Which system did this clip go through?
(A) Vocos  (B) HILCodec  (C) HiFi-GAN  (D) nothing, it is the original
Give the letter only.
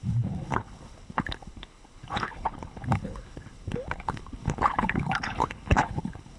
B